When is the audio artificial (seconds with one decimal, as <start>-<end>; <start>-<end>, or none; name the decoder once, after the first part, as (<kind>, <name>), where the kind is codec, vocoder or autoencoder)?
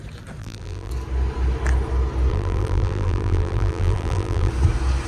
0.4-0.9 (vocoder, BigVGAN v2); 2.3-4.5